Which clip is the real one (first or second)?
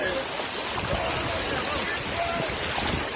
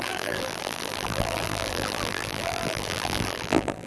first